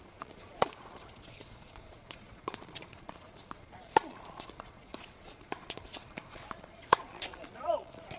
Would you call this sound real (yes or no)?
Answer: no